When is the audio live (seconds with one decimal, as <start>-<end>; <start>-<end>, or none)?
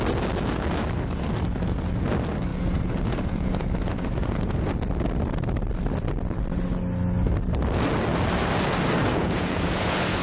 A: 0.0-2.5; 4.7-9.1